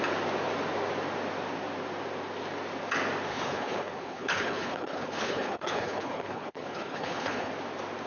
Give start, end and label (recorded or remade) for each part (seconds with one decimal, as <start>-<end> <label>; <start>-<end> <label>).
0.0-3.3 recorded; 3.3-7.5 remade; 7.5-8.1 recorded